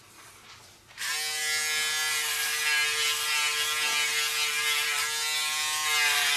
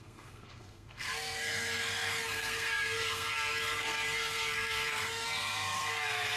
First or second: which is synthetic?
second